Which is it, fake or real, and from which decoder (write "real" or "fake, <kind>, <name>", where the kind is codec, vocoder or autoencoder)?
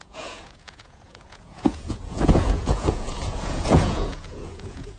fake, vocoder, Vocos